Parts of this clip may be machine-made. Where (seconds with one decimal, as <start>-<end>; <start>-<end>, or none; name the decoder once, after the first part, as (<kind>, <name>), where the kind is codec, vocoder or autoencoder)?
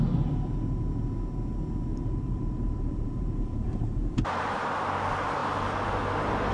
1.9-4.6 (vocoder, BigVGAN v2)